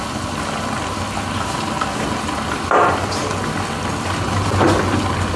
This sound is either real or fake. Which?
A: real